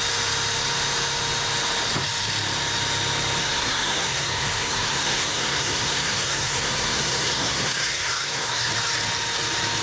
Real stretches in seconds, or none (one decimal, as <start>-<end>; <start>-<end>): 0.0-3.4; 8.7-9.8